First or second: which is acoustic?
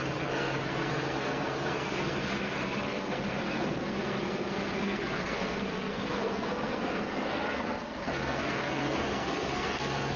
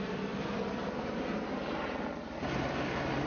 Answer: second